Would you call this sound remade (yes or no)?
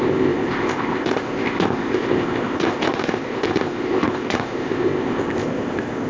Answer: yes